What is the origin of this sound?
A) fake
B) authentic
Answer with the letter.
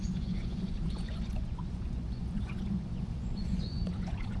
A